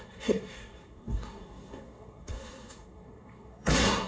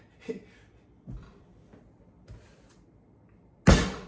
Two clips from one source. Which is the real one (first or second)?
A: second